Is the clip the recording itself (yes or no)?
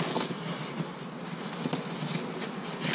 yes